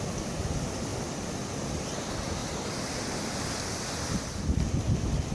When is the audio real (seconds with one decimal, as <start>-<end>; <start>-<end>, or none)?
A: 0.0-0.9; 1.8-2.4; 4.8-5.3